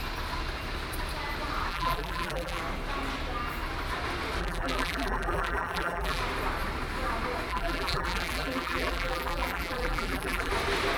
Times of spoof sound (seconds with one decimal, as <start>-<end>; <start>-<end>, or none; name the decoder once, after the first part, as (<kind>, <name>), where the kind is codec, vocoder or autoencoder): 1.7-2.6 (vocoder, BigVGAN v2); 4.4-6.2; 7.5-10.5